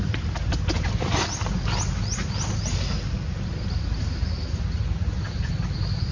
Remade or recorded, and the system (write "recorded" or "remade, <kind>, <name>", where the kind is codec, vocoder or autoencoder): recorded